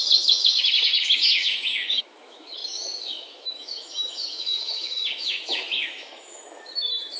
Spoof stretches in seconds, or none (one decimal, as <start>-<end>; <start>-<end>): 0.0-7.2